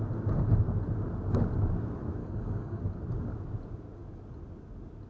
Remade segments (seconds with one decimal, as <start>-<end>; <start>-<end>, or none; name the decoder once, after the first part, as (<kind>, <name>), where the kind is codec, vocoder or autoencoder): 2.2-2.8 (codec, DAC)